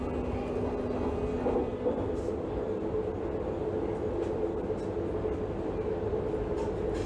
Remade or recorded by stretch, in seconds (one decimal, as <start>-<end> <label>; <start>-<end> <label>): 0.0-7.1 recorded